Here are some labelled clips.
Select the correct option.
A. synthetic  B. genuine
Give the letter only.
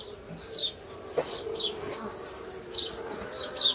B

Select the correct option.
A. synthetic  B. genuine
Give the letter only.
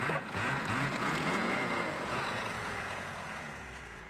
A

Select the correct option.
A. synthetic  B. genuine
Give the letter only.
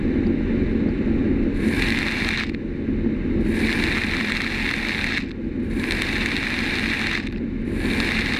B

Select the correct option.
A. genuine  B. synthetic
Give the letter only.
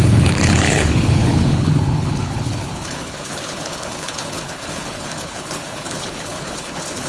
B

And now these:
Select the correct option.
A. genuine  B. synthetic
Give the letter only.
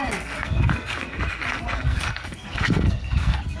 B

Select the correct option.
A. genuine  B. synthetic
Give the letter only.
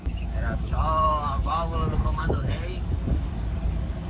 B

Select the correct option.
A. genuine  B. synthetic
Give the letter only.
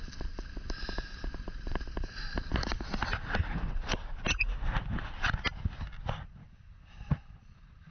A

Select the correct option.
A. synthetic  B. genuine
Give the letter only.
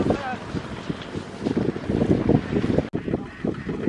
B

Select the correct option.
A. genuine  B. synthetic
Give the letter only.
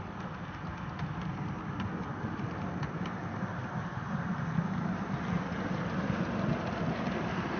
A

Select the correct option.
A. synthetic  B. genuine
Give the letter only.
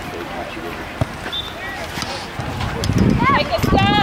B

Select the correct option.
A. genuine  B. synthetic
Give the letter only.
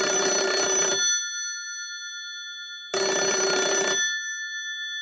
A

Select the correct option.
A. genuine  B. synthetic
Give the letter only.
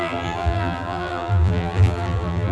B